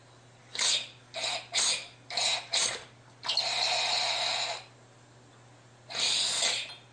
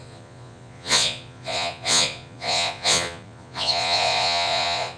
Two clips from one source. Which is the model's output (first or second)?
second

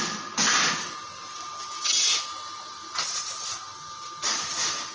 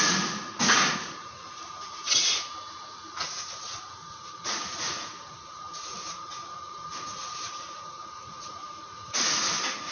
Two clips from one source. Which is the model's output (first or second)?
second